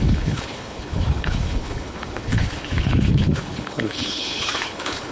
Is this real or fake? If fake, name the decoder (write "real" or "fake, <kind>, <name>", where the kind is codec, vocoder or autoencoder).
fake, codec, HILCodec